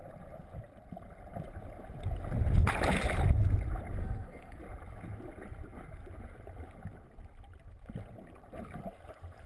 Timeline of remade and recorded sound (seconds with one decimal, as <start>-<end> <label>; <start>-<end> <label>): 0.0-4.0 recorded; 4.0-4.6 remade; 4.6-9.5 recorded